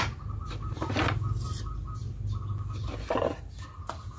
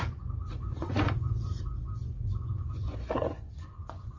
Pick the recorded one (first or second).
first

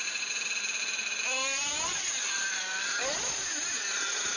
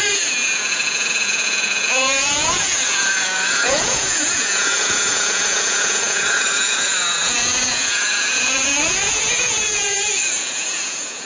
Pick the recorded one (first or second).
first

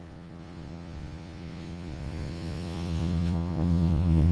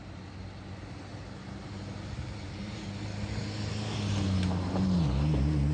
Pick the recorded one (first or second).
second